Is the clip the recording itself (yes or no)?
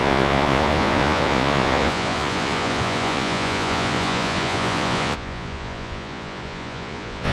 no